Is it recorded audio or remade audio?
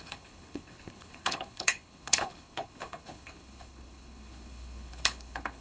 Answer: remade